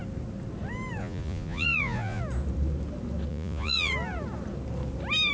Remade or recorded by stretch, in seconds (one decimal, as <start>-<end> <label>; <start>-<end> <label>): 0.0-1.0 recorded; 1.0-2.2 remade; 2.2-3.3 recorded; 3.3-3.9 remade; 3.9-5.3 recorded